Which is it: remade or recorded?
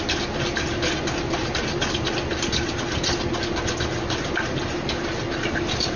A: recorded